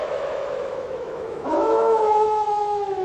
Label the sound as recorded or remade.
remade